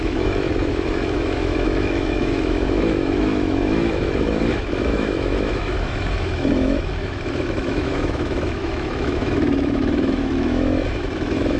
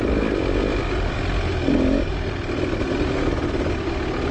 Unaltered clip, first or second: second